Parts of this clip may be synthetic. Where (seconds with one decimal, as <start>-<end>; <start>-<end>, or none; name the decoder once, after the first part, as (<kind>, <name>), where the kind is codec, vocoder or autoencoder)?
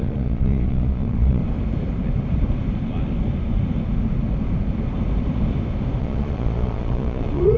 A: 0.0-1.4 (vocoder, Vocos); 6.0-7.6